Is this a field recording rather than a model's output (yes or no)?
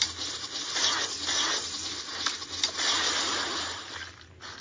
yes